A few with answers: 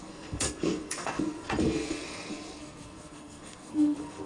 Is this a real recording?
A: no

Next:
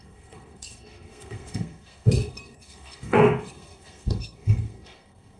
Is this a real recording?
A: no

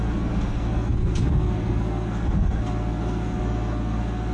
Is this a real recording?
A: no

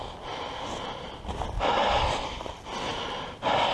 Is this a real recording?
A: yes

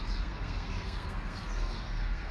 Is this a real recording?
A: no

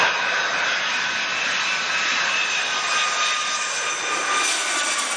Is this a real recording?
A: yes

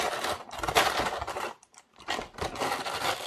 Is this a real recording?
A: yes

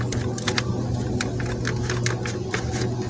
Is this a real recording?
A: yes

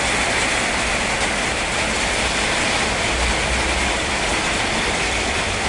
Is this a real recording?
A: yes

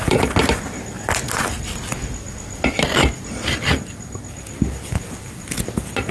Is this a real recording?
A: yes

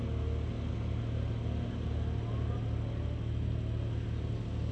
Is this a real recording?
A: yes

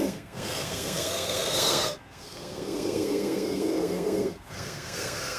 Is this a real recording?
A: no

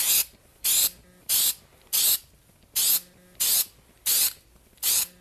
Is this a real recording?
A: yes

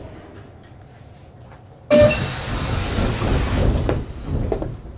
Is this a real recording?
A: yes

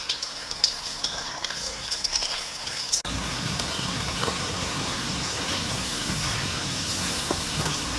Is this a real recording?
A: no